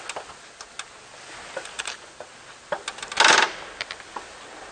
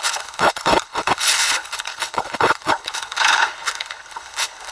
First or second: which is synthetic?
second